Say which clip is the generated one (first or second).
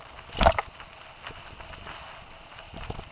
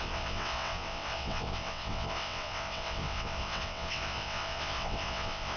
second